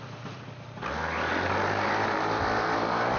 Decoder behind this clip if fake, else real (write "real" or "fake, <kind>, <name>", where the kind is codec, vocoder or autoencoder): real